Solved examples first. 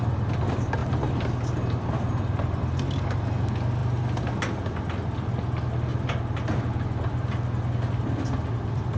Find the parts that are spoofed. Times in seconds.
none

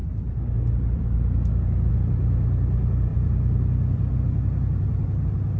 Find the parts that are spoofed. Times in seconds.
0.0-1.9 (vocoder, BigVGAN v2); 3.1-4.1

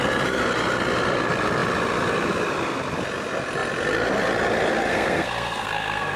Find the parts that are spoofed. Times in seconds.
4.9-6.2 (codec, SNAC)

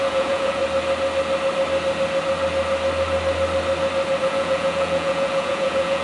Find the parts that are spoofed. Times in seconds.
0.0-0.6 (vocoder, Vocos); 4.2-6.0

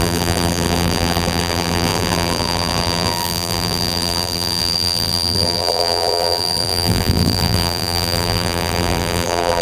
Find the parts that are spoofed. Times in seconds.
0.0-9.6 (vocoder, BigVGAN v2)

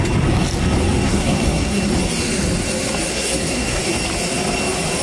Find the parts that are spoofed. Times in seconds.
1.1-1.9 (codec, SNAC); 3.1-3.8